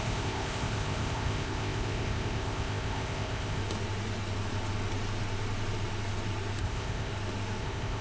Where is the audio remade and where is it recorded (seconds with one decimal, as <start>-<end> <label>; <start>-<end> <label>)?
0.0-3.6 remade; 3.6-6.6 recorded; 6.6-7.1 remade; 7.1-7.6 recorded; 7.6-8.0 remade

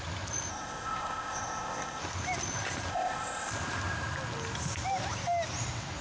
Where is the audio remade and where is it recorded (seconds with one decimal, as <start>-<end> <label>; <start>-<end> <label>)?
0.0-0.5 recorded; 0.5-2.0 remade; 2.0-2.9 recorded; 2.9-3.5 remade; 3.5-6.0 recorded

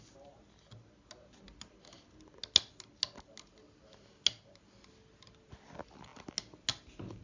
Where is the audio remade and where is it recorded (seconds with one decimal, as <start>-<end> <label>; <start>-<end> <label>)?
0.0-7.2 recorded

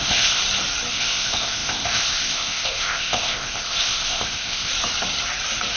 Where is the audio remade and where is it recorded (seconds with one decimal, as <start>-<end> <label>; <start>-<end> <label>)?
0.0-0.4 remade; 0.4-0.9 recorded; 0.9-4.7 remade; 4.7-5.8 recorded

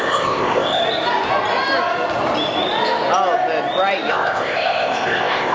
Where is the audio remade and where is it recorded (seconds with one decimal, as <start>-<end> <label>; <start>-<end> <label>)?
0.0-0.8 remade; 0.8-4.1 recorded; 4.1-5.5 remade

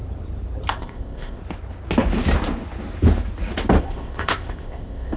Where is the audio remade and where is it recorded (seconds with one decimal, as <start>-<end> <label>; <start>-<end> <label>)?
0.0-0.8 recorded; 0.8-1.4 remade; 1.4-3.8 recorded; 3.8-5.2 remade

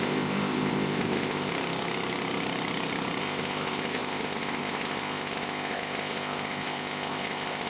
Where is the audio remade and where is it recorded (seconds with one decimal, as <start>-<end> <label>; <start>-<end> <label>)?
0.0-1.5 remade; 1.5-3.2 recorded; 3.2-7.7 remade

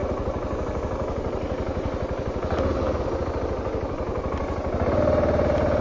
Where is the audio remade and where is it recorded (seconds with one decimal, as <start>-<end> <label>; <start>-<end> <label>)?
0.0-5.8 recorded